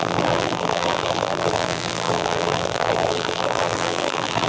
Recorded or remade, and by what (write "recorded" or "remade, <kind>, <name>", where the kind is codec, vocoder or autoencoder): remade, vocoder, BigVGAN v2